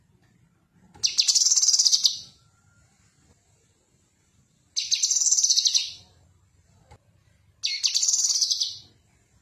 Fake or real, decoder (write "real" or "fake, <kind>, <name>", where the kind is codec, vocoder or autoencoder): real